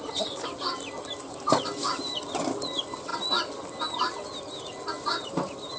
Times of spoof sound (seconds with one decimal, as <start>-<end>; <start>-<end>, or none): none